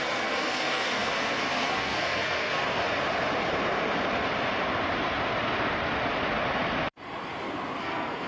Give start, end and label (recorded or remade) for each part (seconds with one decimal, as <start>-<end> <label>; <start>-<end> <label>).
0.0-2.8 remade; 2.8-7.8 recorded; 7.8-8.3 remade